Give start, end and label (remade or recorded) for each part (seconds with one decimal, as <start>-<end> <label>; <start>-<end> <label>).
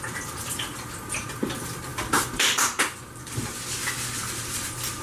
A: 0.0-3.4 remade; 3.4-4.2 recorded; 4.2-5.0 remade